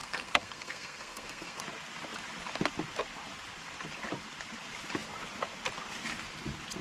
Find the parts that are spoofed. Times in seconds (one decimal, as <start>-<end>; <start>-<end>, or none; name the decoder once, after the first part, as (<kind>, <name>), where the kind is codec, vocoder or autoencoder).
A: 0.0-1.6 (codec, SNAC)